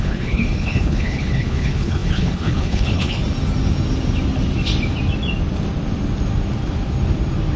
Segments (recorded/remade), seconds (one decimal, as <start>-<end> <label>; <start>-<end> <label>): 0.0-3.2 remade; 3.2-7.6 recorded